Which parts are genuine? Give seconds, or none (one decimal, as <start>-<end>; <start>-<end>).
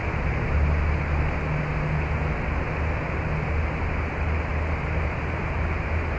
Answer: 0.0-6.2